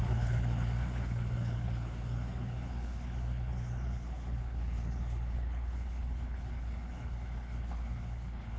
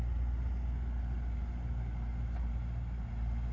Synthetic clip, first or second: first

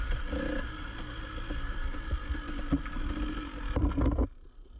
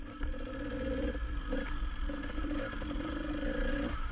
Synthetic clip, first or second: second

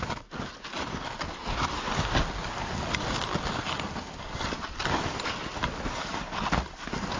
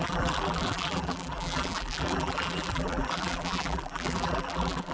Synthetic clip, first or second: second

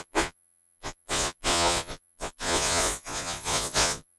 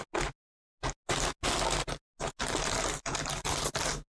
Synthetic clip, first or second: first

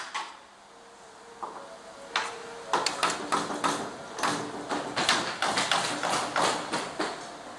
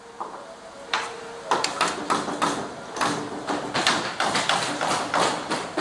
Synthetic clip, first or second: second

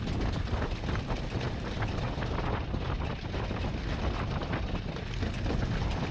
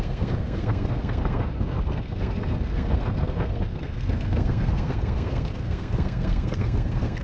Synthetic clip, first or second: second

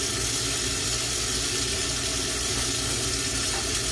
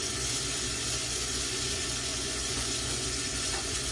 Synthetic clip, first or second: second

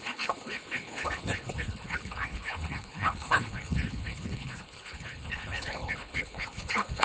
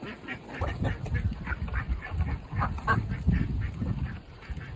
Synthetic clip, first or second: first